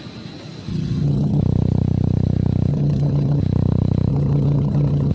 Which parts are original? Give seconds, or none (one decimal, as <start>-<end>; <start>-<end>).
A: 0.0-0.7; 1.4-2.7; 3.4-4.1